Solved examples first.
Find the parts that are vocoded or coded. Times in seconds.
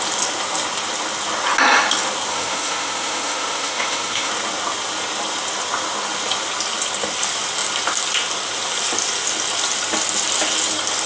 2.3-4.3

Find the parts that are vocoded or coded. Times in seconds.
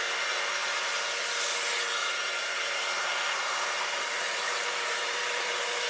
2.0-5.5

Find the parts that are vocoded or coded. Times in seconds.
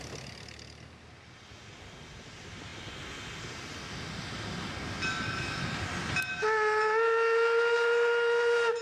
none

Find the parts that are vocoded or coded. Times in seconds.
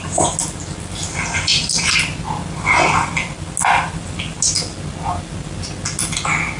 none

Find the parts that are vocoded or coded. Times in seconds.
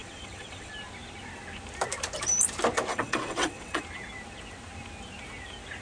0.0-0.7; 2.9-3.8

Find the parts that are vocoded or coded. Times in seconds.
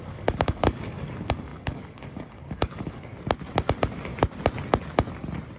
0.0-3.1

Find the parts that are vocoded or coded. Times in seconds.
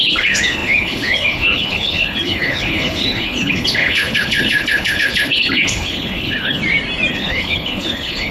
0.0-6.6; 7.1-8.3